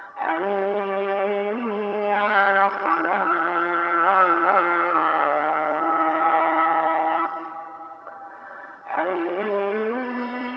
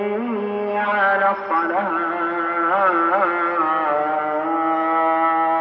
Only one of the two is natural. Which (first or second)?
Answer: second